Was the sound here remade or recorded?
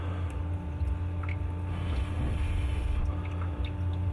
recorded